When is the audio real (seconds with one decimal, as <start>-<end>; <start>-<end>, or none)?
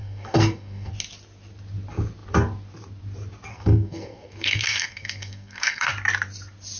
0.9-3.5; 5.9-6.8